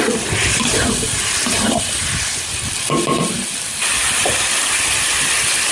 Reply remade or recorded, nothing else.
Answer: recorded